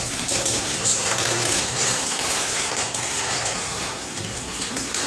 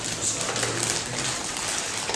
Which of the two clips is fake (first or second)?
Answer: first